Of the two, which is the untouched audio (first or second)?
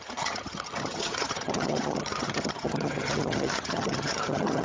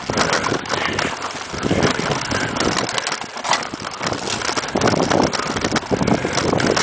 second